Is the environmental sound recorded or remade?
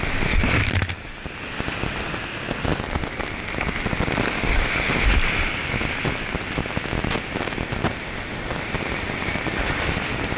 recorded